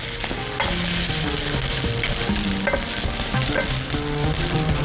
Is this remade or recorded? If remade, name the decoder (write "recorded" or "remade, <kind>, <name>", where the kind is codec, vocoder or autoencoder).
recorded